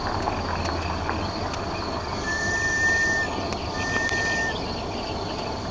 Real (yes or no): yes